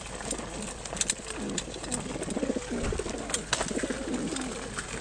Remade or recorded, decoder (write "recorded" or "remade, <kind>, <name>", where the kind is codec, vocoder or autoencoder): recorded